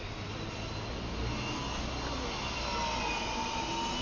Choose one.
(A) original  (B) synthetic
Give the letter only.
A